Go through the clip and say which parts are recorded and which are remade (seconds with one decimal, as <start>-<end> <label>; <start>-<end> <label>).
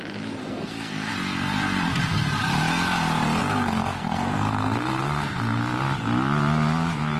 0.0-0.4 recorded; 0.4-1.1 remade; 1.1-3.4 recorded; 3.4-5.6 remade; 5.6-7.2 recorded